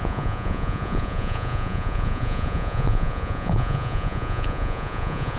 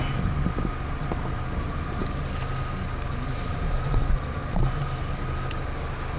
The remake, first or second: first